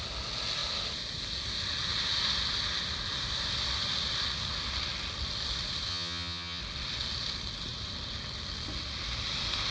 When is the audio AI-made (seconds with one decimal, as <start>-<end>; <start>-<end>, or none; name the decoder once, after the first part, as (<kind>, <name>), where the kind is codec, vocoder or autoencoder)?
5.9-6.6 (vocoder, HiFi-GAN)